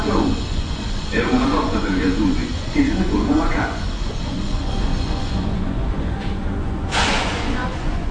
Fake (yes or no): yes